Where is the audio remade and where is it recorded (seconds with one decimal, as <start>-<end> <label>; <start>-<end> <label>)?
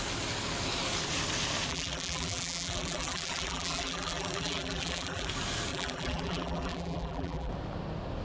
0.0-1.7 recorded; 1.7-5.3 remade; 5.3-5.7 recorded; 5.7-7.5 remade; 7.5-8.2 recorded